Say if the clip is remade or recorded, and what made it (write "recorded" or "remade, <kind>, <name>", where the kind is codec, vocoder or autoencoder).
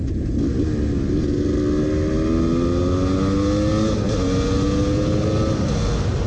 recorded